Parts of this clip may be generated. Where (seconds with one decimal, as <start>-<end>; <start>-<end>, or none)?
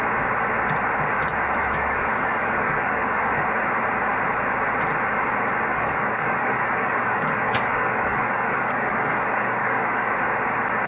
1.6-3.4; 5.7-10.1